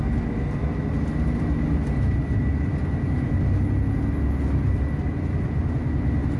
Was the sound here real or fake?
real